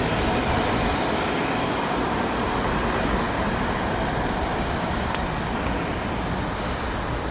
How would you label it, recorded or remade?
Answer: recorded